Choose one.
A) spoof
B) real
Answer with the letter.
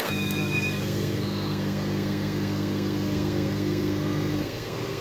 A